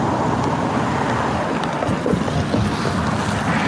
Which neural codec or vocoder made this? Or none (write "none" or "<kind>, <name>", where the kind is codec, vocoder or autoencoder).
none